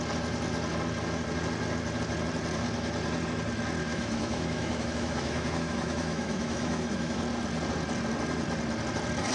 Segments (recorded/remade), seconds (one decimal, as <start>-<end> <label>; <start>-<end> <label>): 0.0-3.9 recorded; 3.9-7.2 remade; 7.2-9.3 recorded

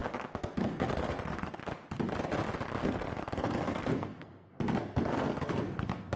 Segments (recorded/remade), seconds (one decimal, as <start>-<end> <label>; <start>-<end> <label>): 0.0-1.6 remade; 1.6-2.8 recorded; 2.8-6.2 remade

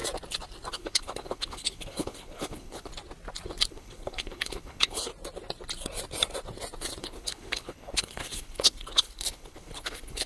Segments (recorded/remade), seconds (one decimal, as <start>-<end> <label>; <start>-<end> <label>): 0.0-0.7 recorded; 0.7-2.9 remade; 2.9-3.7 recorded; 3.7-5.1 remade; 5.1-7.0 recorded; 7.0-10.3 remade

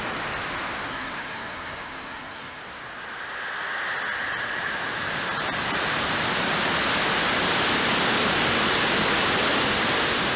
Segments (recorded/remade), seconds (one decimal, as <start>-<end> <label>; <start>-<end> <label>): 0.0-0.9 recorded; 0.9-2.6 remade; 2.6-10.4 recorded

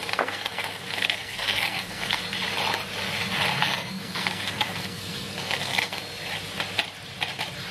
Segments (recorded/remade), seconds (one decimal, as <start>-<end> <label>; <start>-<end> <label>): 0.0-2.2 remade; 2.2-3.5 recorded; 3.5-6.0 remade; 6.0-7.7 recorded